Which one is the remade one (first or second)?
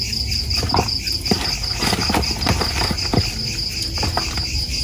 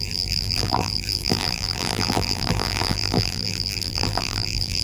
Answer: second